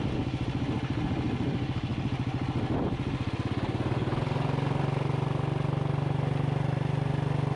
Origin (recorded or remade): recorded